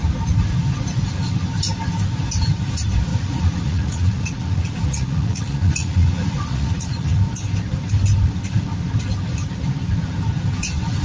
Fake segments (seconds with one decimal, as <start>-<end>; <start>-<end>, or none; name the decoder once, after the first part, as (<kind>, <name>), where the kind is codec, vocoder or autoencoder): 3.1-7.2 (vocoder, Vocos)